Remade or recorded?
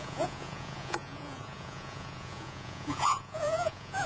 remade